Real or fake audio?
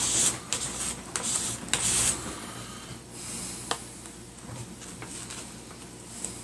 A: real